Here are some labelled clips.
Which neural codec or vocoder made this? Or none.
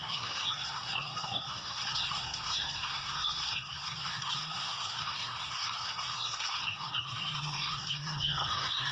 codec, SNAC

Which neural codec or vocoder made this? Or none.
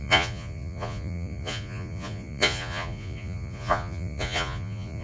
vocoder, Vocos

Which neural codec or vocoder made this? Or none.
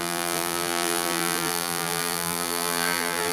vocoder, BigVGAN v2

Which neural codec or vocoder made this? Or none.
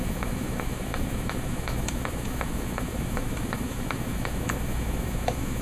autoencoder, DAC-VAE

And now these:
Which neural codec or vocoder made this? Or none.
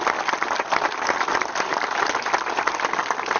none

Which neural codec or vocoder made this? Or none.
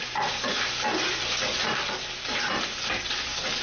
none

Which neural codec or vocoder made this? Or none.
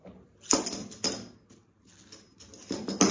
none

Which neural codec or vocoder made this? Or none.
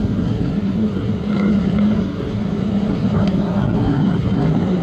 codec, SNAC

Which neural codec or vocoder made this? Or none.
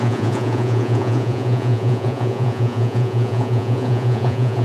vocoder, Vocos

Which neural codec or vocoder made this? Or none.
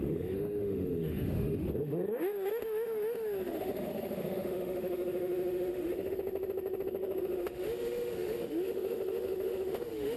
autoencoder, DAC-VAE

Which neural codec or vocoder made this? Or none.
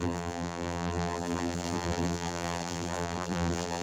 vocoder, BigVGAN v2